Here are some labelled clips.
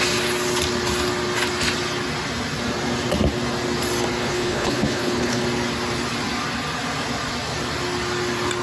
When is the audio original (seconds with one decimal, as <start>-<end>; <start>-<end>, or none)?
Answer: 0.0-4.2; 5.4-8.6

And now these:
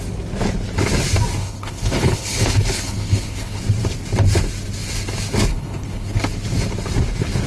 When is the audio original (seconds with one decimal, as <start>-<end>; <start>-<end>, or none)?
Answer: 0.0-1.4; 3.6-5.5; 6.2-7.5

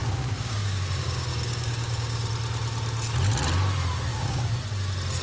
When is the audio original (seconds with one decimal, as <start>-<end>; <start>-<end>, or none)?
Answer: 2.3-4.1; 4.6-5.2